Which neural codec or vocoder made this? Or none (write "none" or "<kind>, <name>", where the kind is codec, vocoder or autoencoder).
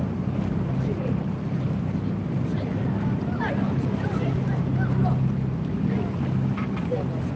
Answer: none